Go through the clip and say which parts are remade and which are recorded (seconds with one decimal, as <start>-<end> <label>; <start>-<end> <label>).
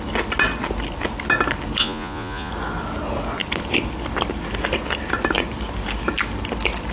0.0-1.8 recorded; 1.8-2.5 remade; 2.5-6.9 recorded